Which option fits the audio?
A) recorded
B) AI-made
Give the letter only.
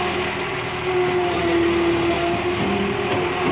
A